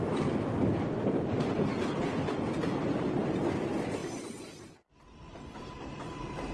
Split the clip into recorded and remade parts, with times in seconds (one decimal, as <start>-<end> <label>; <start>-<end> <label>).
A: 0.0-3.2 remade; 3.2-4.0 recorded; 4.0-4.9 remade; 4.9-6.5 recorded